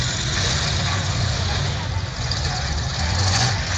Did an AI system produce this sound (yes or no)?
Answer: yes